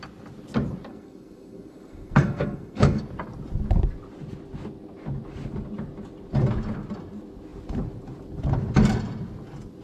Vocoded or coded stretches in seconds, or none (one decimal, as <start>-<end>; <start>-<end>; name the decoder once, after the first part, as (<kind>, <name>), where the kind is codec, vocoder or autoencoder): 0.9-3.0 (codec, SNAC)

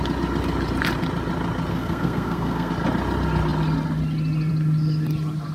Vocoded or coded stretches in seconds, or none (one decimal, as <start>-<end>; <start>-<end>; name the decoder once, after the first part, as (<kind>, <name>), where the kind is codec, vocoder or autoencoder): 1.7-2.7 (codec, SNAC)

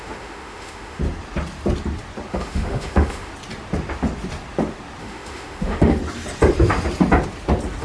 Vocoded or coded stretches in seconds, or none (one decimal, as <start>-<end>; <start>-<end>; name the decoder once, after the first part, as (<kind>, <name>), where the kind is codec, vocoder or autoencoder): 0.0-1.0 (autoencoder, DAC-VAE); 2.3-3.3; 5.0-6.0